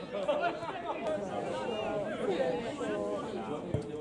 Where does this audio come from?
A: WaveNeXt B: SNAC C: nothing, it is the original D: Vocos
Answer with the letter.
C